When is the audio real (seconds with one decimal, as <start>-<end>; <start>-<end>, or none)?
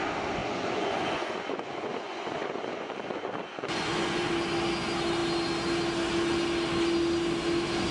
0.0-0.4; 4.3-7.9